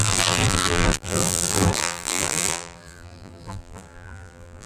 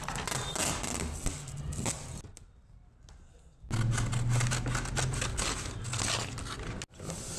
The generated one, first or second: first